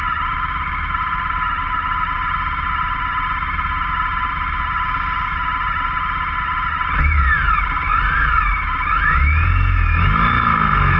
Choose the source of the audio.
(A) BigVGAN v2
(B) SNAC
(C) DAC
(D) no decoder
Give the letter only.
D